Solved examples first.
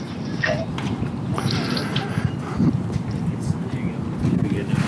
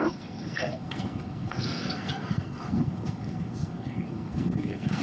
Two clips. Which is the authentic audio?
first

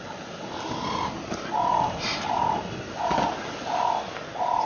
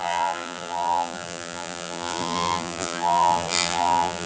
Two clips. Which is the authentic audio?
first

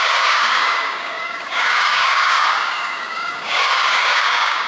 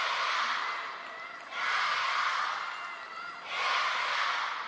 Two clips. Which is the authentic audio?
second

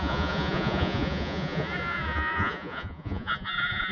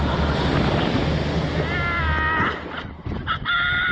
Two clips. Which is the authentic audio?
second